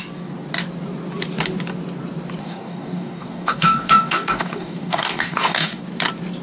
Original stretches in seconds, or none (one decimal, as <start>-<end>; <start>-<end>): 0.0-2.4; 5.8-6.4